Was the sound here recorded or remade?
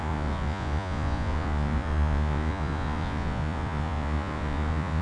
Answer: remade